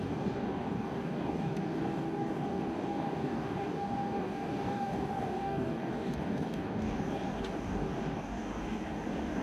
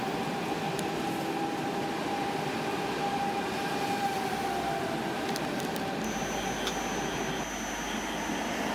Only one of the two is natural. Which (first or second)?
second